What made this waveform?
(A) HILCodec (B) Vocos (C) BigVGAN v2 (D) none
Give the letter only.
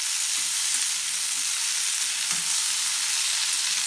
D